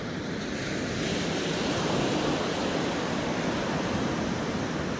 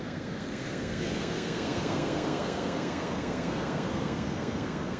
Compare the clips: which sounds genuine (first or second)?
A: first